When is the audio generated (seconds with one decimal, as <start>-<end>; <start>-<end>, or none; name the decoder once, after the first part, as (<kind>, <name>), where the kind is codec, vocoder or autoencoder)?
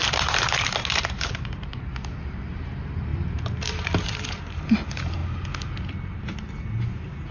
0.0-1.7 (vocoder, BigVGAN v2); 2.2-5.2; 6.8-7.3